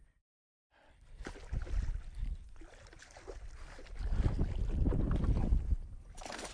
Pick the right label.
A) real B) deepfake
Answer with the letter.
B